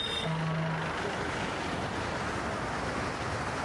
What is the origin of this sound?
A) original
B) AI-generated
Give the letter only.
A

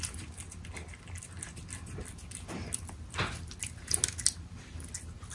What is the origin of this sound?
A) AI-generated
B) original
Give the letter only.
B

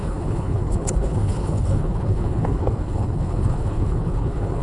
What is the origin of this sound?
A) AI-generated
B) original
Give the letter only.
A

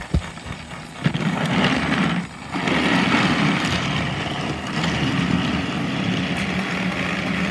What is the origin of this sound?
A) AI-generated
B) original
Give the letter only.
B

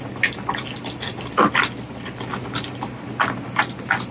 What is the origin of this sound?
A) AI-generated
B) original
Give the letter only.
B